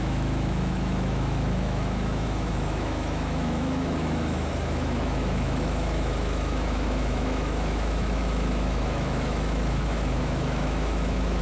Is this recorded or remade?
remade